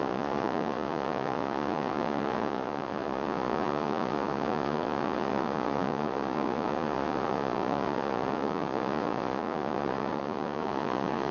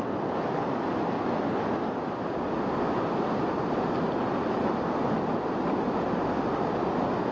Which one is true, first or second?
second